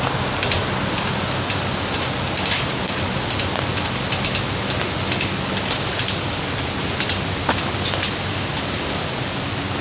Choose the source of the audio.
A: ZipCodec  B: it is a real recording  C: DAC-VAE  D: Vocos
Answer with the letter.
B